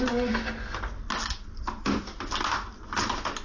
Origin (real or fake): real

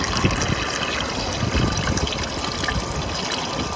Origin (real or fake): real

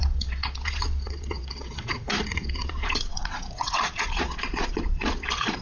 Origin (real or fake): fake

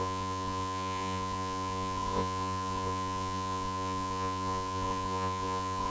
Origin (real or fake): fake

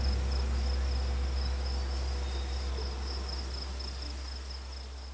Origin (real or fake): real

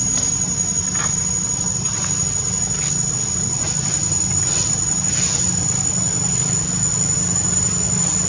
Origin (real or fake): real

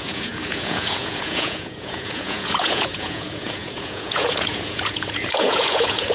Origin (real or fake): fake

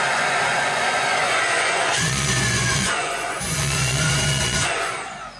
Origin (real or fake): fake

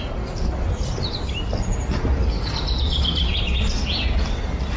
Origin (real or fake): real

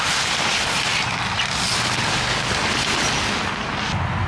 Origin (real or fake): real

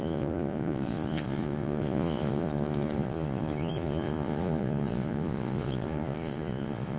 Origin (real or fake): fake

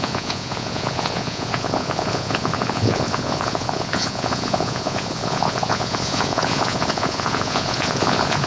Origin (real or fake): fake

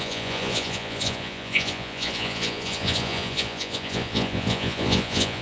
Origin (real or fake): fake